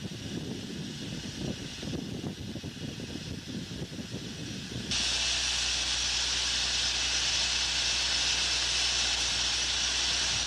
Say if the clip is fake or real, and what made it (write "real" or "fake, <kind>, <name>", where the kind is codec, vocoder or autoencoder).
real